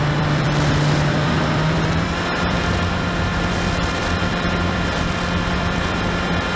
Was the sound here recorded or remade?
remade